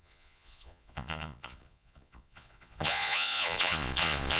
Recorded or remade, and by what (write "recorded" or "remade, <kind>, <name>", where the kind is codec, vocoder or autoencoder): remade, vocoder, Vocos